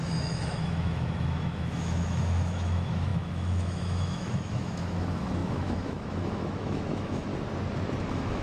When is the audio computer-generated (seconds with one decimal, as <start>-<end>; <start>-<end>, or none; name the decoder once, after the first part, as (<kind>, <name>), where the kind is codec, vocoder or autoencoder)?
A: 0.0-7.3 (autoencoder, DAC-VAE); 8.0-8.4